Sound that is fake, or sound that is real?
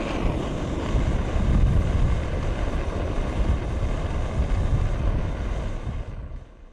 real